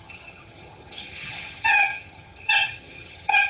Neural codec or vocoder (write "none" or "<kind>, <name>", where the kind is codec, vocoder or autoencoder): vocoder, HiFi-GAN